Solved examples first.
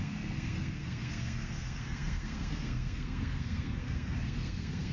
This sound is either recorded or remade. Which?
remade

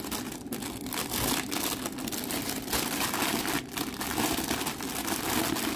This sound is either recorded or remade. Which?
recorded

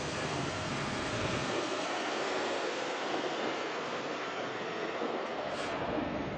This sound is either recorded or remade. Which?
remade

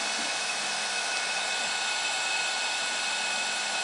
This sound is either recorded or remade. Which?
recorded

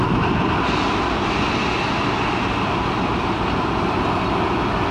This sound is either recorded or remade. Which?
recorded